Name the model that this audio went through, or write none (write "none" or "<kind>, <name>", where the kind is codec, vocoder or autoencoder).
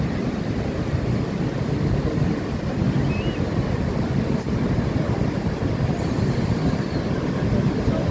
none